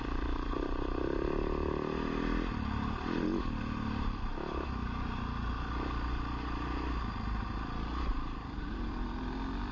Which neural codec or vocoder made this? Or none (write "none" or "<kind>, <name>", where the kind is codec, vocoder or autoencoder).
none